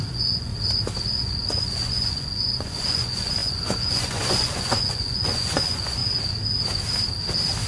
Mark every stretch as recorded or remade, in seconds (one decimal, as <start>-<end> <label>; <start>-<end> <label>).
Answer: 0.0-0.5 remade; 0.5-1.1 recorded; 1.1-6.0 remade; 6.0-7.7 recorded